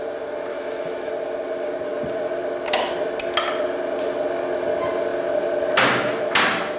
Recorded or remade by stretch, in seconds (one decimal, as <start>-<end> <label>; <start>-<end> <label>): 0.0-0.5 recorded; 0.5-1.1 remade; 1.1-6.8 recorded